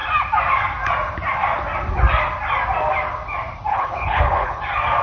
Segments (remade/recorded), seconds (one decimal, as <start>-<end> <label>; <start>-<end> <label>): 0.0-3.7 recorded; 3.7-4.6 remade; 4.6-5.0 recorded